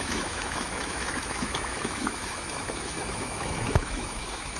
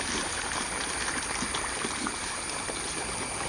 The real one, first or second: second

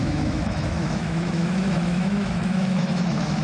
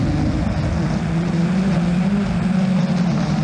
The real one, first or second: second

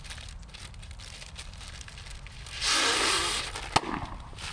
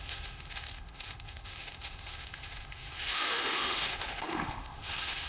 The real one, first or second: first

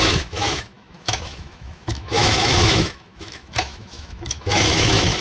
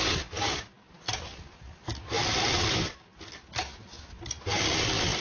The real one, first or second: second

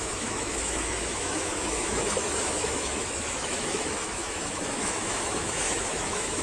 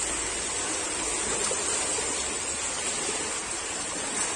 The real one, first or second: second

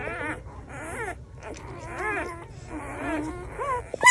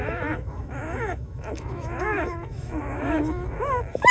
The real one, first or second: first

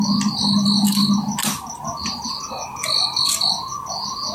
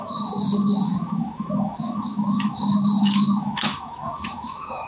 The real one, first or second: first